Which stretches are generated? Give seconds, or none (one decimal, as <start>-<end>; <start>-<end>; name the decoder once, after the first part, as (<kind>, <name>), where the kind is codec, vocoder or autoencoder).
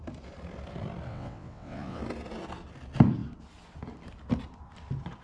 1.1-2.0 (vocoder, WaveNeXt)